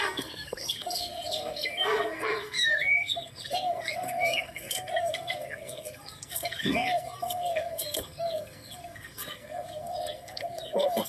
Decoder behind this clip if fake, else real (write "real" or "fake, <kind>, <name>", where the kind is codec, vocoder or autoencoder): fake, codec, SNAC